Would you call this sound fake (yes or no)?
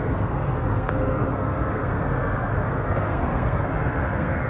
yes